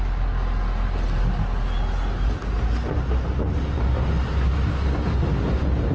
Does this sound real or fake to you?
real